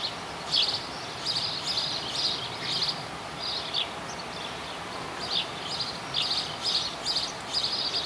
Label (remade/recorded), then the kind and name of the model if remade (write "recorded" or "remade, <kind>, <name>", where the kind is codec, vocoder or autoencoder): recorded